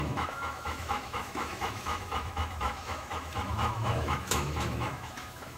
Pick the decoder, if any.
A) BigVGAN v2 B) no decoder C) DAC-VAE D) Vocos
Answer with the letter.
C